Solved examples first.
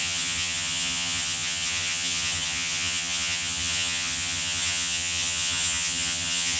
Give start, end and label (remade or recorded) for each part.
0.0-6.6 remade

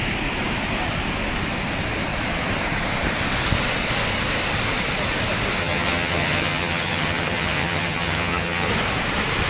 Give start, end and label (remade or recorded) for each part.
0.0-5.6 recorded; 5.6-8.7 remade; 8.7-9.5 recorded